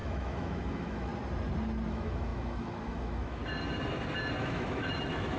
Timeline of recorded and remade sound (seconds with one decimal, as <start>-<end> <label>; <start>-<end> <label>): 0.0-1.1 remade; 1.1-1.9 recorded; 1.9-3.4 remade; 3.4-4.4 recorded; 4.4-5.4 remade